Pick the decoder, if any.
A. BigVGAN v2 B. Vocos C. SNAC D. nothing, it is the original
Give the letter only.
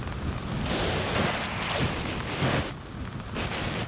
D